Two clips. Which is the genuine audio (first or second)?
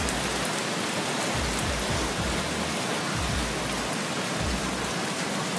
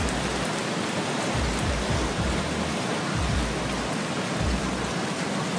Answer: first